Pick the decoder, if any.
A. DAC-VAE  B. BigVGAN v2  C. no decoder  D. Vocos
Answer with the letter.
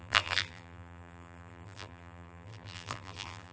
B